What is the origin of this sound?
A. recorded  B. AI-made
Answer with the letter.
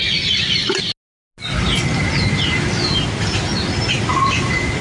A